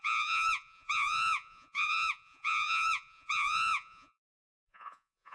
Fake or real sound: fake